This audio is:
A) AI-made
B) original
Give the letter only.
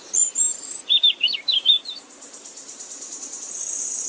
A